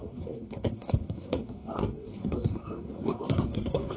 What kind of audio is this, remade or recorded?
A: remade